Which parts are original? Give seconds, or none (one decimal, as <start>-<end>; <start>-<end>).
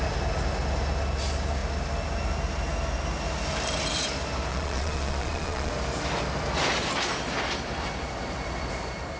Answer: 0.0-4.5; 5.7-9.2